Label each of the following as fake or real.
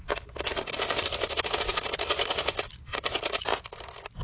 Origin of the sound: real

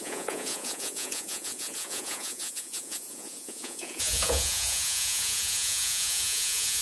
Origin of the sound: fake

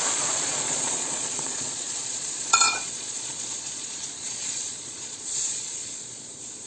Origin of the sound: fake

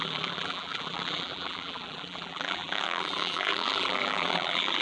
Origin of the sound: fake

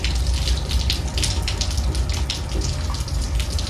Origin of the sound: fake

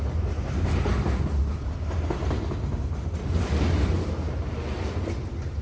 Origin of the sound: real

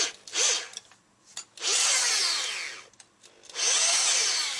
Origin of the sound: real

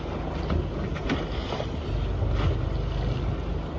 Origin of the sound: real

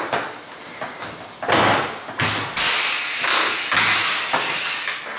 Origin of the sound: real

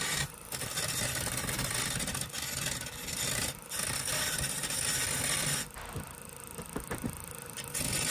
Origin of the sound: real